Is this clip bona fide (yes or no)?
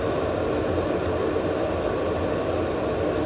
yes